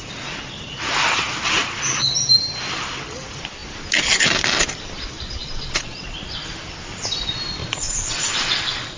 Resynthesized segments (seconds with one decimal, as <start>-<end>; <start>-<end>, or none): 5.4-6.0; 7.6-9.0

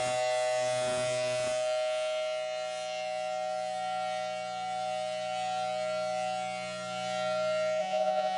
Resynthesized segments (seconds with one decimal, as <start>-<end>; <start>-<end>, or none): 7.8-8.4

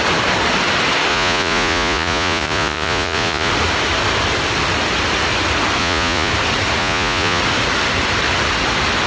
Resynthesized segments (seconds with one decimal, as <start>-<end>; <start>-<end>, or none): 1.1-3.5; 5.8-6.3; 6.8-7.4